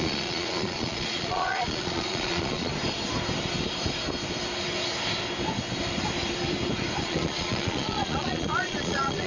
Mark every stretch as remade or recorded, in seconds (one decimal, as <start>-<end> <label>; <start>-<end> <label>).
0.0-2.7 remade; 2.7-7.0 recorded; 7.0-9.3 remade